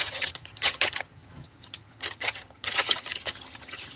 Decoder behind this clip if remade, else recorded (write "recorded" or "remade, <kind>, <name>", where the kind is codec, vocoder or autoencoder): remade, vocoder, HiFi-GAN